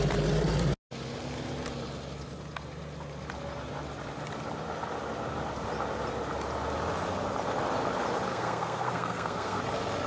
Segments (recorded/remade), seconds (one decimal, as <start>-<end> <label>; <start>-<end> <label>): 0.0-8.3 recorded; 8.3-9.6 remade; 9.6-10.1 recorded